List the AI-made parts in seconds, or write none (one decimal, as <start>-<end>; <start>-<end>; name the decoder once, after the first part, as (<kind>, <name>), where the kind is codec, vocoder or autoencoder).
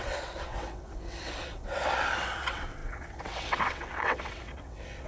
0.0-5.1 (vocoder, WaveNeXt)